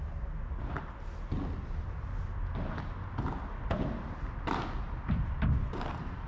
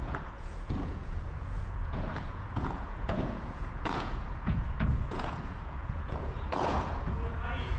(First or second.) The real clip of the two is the first